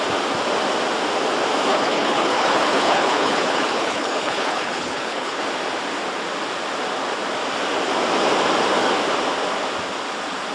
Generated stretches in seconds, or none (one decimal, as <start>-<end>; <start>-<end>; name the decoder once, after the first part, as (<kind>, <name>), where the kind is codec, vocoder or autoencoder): 1.7-5.4 (codec, HILCodec)